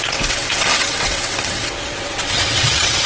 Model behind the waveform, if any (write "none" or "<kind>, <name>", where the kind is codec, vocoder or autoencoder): vocoder, WaveNeXt